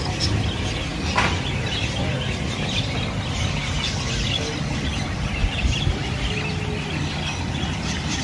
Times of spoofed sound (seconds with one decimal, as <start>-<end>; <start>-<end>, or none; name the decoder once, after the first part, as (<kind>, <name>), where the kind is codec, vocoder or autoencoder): none